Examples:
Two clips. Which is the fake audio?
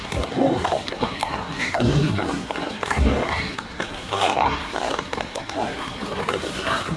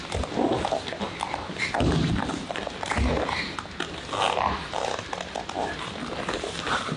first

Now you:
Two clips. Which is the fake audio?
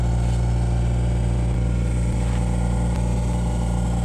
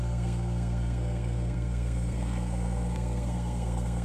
second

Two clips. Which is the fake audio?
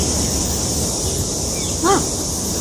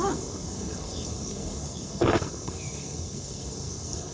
second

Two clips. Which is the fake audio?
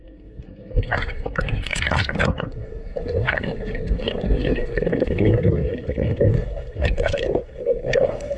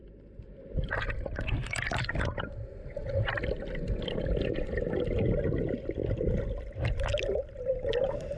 first